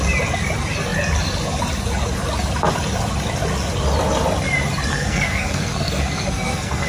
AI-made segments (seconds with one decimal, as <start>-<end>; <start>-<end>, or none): 4.9-6.9